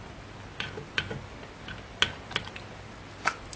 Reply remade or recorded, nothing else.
recorded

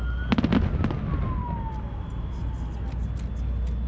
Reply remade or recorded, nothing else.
recorded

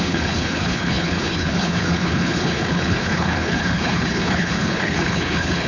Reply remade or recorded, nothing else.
remade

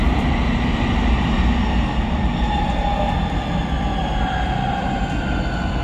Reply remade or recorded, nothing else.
recorded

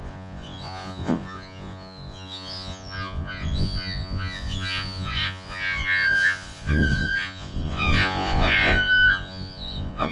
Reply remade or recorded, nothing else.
remade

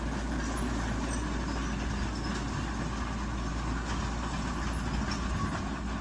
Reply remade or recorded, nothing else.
recorded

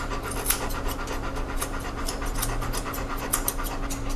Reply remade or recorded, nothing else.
recorded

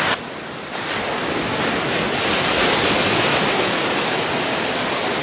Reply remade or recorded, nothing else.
recorded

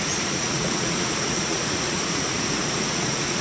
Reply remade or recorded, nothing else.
remade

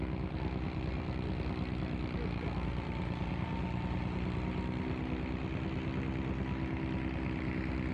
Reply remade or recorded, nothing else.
recorded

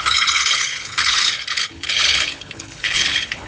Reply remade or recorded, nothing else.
remade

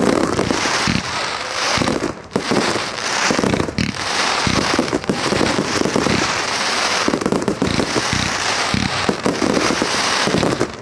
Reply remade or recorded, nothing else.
remade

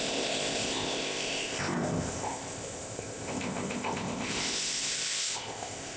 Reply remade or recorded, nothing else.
remade